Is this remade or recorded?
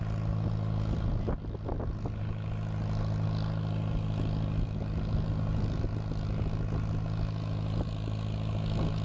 recorded